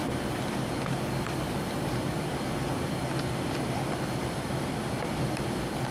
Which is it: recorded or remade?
recorded